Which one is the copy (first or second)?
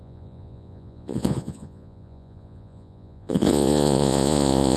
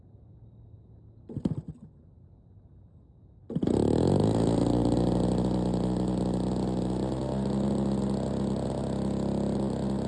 first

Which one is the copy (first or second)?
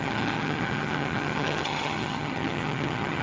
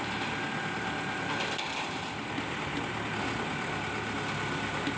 first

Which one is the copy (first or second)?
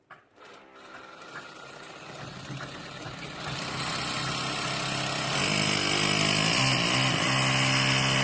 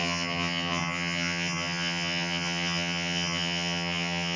second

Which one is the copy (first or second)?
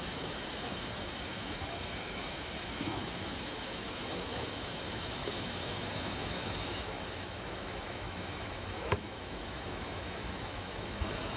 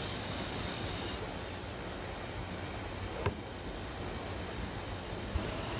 first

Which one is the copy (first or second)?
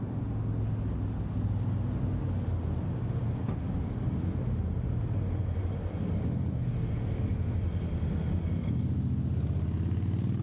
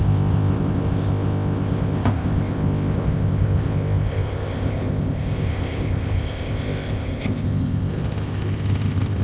second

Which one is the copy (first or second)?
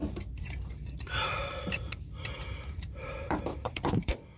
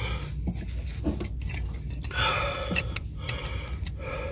first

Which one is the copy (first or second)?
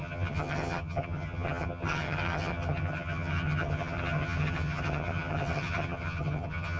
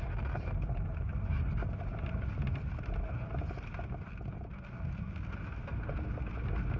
first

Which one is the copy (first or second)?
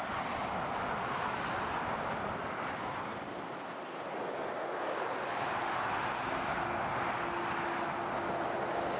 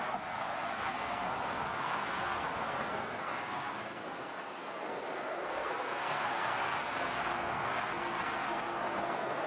second